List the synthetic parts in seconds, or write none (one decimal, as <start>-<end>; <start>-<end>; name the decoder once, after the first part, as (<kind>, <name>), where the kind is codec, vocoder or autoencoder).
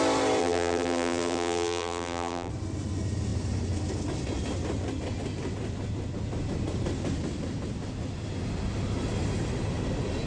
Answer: 0.4-2.5 (vocoder, BigVGAN v2)